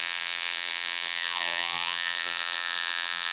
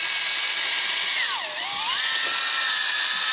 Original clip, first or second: second